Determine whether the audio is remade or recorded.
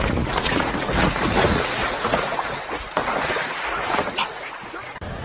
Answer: remade